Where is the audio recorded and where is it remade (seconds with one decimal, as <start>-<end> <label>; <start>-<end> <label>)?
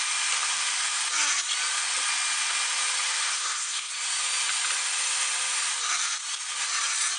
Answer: 0.0-3.2 recorded; 3.2-3.9 remade; 3.9-7.2 recorded